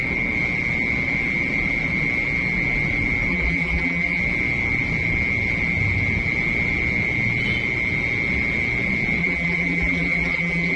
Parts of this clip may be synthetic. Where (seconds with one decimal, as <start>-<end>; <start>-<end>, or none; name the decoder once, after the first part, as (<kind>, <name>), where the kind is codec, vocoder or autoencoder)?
3.3-4.2 (vocoder, BigVGAN v2); 9.2-10.8